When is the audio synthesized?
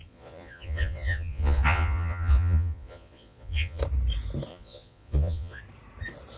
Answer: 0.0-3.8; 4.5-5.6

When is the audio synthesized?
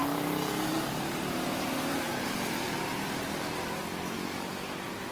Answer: 0.7-3.8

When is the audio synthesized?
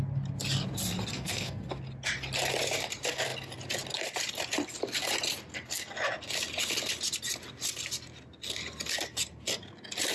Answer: 1.1-1.7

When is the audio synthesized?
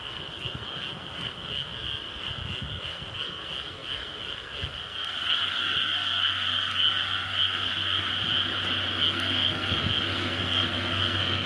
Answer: 0.0-8.1; 8.9-11.5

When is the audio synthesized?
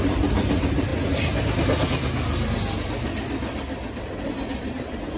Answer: 0.0-0.9; 4.0-5.2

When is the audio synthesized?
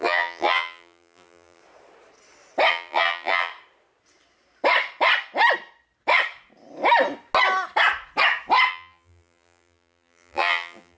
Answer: 0.0-1.6; 2.7-3.5; 8.7-11.0